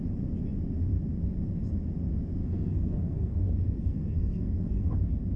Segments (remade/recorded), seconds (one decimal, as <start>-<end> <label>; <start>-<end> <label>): 0.0-2.4 recorded; 2.4-4.9 remade; 4.9-5.4 recorded